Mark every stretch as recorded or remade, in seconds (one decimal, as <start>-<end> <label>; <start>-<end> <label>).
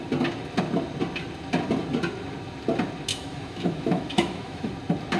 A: 0.0-3.1 recorded; 3.1-4.7 remade; 4.7-5.2 recorded